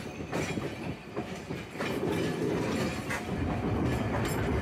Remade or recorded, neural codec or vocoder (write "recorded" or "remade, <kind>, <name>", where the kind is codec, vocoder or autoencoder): recorded